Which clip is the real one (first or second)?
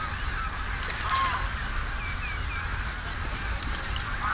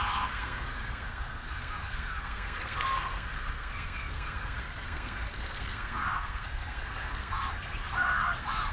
first